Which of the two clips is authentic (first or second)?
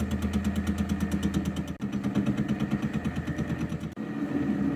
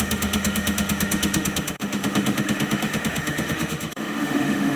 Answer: first